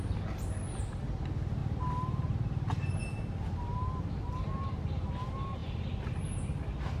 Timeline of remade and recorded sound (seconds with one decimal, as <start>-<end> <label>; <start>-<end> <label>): 0.0-7.0 recorded

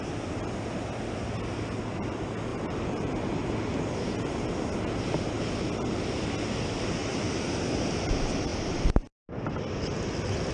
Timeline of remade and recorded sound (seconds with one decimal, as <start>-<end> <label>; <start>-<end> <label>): 0.0-2.5 recorded; 2.5-3.5 remade; 3.5-7.0 recorded; 7.0-7.6 remade; 7.6-8.5 recorded; 8.5-9.2 remade; 9.2-10.5 recorded

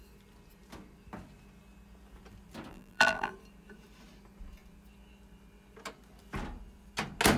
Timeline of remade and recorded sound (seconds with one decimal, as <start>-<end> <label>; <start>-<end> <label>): 0.0-2.7 recorded; 2.7-3.3 remade; 3.3-7.4 recorded

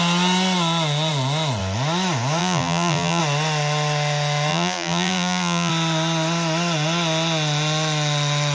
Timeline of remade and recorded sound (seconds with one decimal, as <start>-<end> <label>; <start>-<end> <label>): 0.0-2.4 recorded; 2.4-3.2 remade; 3.2-4.5 recorded; 4.5-5.7 remade; 5.7-8.5 recorded

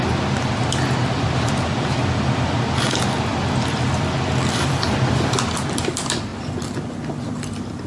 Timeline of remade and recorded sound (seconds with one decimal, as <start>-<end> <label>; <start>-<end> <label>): 0.0-1.0 recorded; 1.0-3.3 remade; 3.3-7.9 recorded